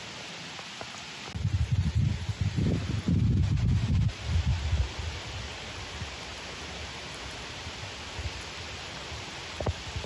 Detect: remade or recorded recorded